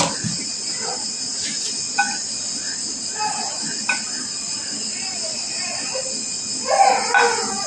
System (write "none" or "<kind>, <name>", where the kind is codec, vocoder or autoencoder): none